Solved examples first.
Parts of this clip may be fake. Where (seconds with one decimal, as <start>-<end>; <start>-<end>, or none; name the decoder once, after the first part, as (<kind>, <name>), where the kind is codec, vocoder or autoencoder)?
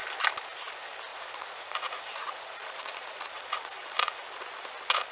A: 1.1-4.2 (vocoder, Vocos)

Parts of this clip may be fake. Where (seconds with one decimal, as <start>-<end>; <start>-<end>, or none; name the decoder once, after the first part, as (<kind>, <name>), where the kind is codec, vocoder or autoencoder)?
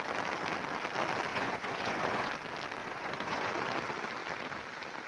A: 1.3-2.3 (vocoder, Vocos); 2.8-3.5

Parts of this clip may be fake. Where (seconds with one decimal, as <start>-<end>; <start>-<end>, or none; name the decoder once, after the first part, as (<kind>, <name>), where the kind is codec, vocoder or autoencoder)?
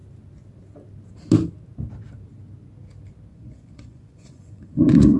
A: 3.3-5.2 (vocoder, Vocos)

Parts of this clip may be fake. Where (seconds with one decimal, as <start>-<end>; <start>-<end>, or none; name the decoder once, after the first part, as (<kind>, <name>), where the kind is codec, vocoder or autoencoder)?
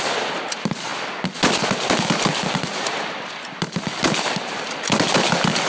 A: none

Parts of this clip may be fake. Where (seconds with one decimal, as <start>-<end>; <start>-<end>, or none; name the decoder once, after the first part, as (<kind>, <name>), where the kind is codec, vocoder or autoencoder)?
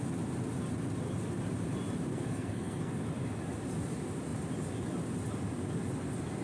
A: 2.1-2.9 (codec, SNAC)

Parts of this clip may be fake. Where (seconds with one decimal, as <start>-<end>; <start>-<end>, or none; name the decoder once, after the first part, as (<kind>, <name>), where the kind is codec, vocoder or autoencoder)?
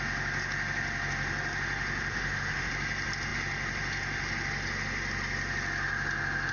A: 2.1-2.7 (autoencoder, DAC-VAE)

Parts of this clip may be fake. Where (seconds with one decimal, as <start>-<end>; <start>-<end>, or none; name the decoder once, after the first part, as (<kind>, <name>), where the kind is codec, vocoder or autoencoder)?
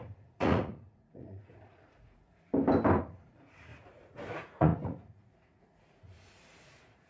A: 0.0-2.5 (vocoder, Vocos); 3.0-3.7; 4.3-7.1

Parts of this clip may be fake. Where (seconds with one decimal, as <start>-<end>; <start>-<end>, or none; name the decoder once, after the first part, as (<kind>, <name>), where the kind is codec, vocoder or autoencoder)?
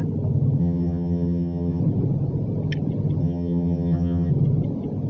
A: 0.6-1.8 (vocoder, HiFi-GAN); 3.2-4.3